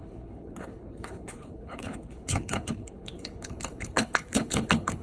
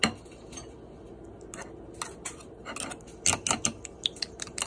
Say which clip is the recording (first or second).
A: second